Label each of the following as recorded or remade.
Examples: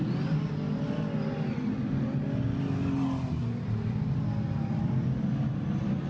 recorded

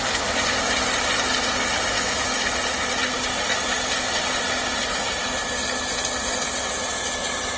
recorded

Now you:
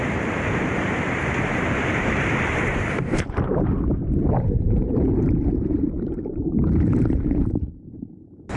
remade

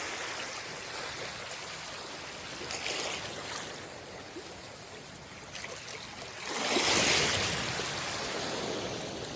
recorded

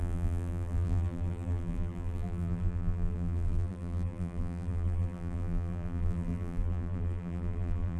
remade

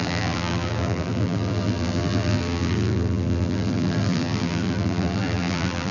remade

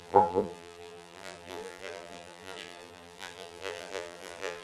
remade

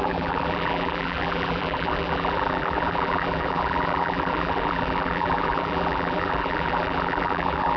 remade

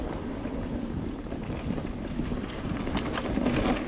recorded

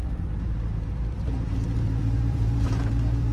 remade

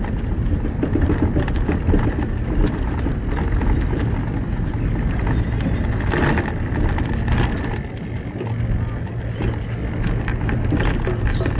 recorded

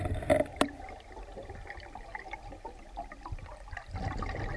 recorded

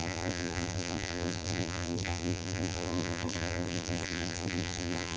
remade